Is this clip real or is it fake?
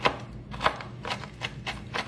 real